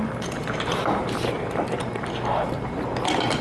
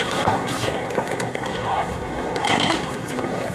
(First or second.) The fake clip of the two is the second